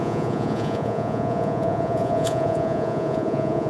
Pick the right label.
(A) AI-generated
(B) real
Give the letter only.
A